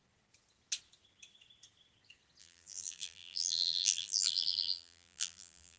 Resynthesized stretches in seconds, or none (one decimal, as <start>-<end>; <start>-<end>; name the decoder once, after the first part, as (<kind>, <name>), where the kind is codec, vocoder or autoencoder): 2.4-5.8 (vocoder, BigVGAN v2)